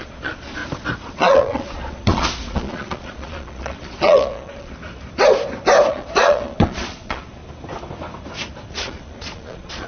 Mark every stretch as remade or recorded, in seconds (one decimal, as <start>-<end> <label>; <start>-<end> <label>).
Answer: 0.0-0.6 remade; 0.6-1.1 recorded; 1.1-4.7 remade; 4.7-5.9 recorded; 5.9-7.4 remade; 7.4-8.7 recorded; 8.7-9.9 remade